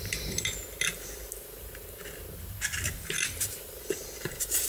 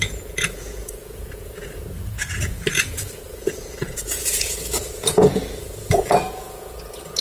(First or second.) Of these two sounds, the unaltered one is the first